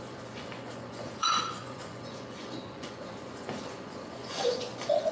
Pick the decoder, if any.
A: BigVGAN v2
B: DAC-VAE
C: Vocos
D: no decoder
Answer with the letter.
C